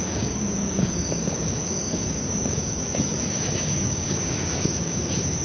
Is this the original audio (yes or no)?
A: no